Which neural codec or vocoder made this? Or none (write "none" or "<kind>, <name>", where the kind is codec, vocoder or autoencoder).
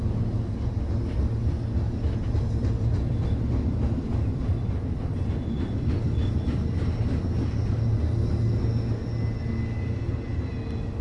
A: none